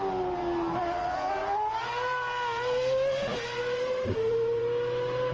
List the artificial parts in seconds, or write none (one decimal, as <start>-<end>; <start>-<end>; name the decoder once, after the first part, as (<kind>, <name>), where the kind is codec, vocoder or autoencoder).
1.4-4.6 (vocoder, BigVGAN v2)